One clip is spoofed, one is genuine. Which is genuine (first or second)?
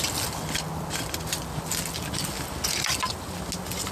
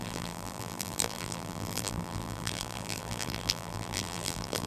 first